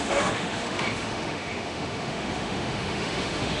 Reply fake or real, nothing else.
fake